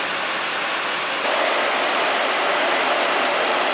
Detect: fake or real real